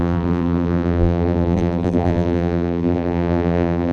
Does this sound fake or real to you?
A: fake